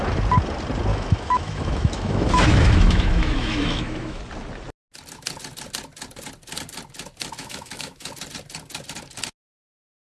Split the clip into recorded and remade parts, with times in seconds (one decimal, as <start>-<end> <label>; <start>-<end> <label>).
0.0-0.9 recorded; 0.9-4.2 remade; 4.2-7.4 recorded; 7.4-8.1 remade; 8.1-10.1 recorded